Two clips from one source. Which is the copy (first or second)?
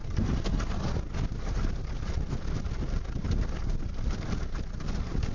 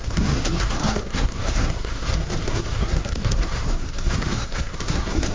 second